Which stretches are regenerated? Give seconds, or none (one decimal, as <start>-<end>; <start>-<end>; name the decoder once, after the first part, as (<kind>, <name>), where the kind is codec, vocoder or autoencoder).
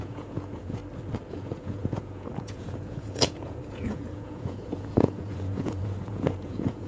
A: 0.0-0.8 (vocoder, Vocos); 1.3-6.9